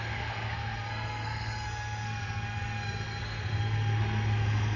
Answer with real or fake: fake